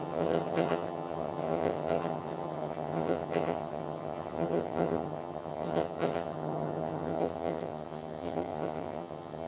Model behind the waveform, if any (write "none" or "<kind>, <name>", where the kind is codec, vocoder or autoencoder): vocoder, HiFi-GAN